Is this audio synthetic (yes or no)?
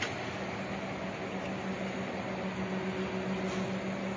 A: no